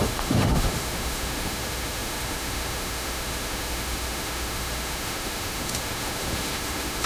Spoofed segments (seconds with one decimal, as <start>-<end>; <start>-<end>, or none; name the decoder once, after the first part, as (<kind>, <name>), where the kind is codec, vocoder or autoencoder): 0.0-7.1 (autoencoder, DAC-VAE)